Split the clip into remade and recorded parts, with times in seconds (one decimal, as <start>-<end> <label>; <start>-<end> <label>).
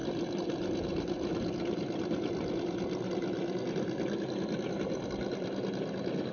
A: 0.0-6.3 recorded